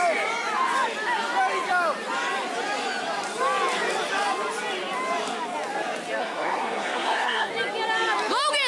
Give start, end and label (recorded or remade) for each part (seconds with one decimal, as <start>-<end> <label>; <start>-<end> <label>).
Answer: 0.0-6.2 recorded; 6.2-7.5 remade; 7.5-8.7 recorded